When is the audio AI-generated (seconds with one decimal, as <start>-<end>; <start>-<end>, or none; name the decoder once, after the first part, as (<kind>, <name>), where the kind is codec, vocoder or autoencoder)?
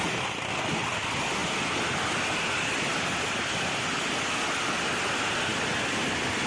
none